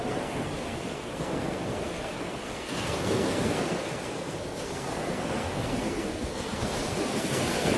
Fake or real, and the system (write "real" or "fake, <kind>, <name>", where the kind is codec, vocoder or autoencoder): fake, codec, SNAC